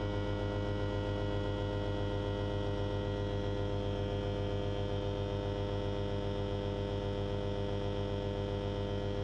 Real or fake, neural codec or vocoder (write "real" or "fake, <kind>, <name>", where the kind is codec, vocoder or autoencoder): real